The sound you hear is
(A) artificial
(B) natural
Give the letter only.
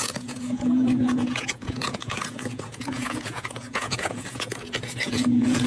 A